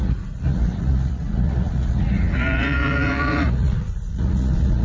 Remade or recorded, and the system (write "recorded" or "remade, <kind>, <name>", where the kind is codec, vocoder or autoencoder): remade, vocoder, Vocos